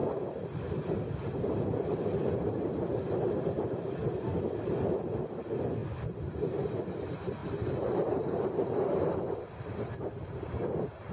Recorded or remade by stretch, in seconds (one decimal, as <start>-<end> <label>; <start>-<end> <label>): 0.0-5.8 recorded; 5.8-6.7 remade; 6.7-7.4 recorded; 7.4-8.8 remade; 8.8-11.1 recorded